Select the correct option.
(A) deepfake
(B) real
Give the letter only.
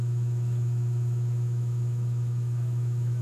A